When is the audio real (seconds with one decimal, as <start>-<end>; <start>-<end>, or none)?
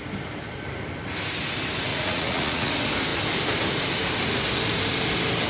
0.0-1.9; 2.7-5.5